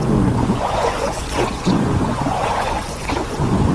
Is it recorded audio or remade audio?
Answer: remade